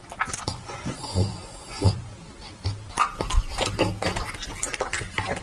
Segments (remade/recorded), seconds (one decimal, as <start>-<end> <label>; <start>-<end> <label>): 0.0-0.5 recorded; 0.5-2.1 remade; 2.1-5.4 recorded